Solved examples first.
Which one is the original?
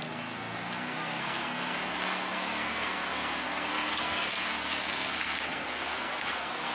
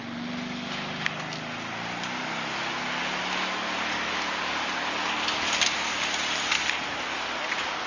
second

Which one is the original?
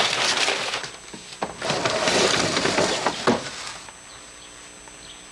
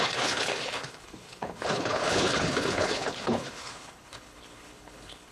first